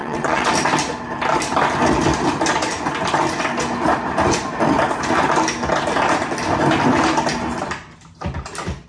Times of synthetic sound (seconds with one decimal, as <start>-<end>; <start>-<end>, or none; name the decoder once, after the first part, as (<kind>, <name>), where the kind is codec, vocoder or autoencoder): 0.0-0.5 (vocoder, WaveNeXt)